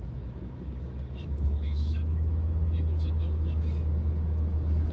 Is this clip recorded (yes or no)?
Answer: no